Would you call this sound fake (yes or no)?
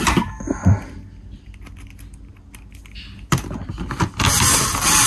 no